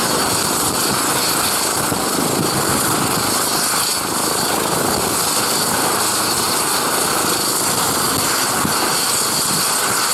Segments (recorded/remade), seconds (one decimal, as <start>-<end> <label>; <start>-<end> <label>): 0.0-10.1 recorded